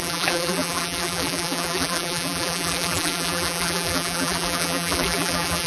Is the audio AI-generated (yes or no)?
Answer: yes